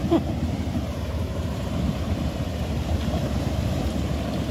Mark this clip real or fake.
fake